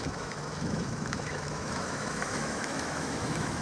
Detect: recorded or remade remade